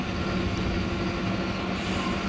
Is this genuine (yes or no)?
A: yes